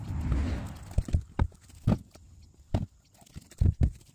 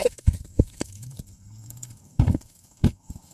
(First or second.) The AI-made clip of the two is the second